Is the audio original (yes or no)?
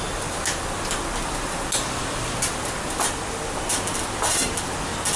yes